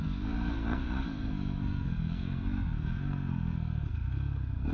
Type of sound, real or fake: fake